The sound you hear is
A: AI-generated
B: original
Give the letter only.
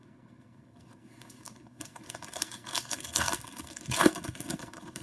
A